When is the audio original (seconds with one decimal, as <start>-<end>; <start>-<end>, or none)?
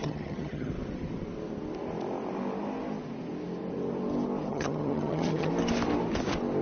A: 0.7-4.5; 5.5-6.6